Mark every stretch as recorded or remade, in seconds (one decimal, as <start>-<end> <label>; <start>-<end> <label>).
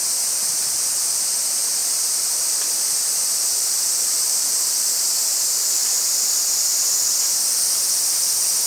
0.0-1.2 remade; 1.2-1.8 recorded; 1.8-6.2 remade; 6.2-8.7 recorded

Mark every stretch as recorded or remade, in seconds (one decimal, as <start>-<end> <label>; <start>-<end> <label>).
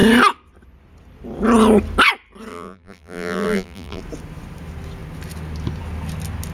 0.0-2.5 recorded; 2.5-4.0 remade; 4.0-6.5 recorded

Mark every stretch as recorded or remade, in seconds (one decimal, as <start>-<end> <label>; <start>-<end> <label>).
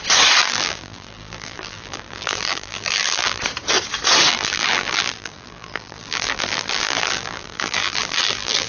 0.0-0.4 recorded; 0.4-3.4 remade; 3.4-4.3 recorded; 4.3-8.7 remade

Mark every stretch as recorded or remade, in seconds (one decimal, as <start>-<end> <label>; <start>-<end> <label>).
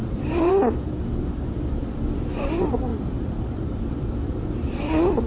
0.0-0.5 remade; 0.5-2.9 recorded; 2.9-4.4 remade; 4.4-5.3 recorded